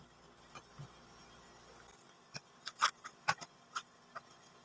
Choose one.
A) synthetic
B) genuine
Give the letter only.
B